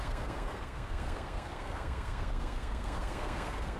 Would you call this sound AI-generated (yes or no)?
yes